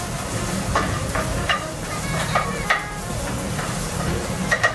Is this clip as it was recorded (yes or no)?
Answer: no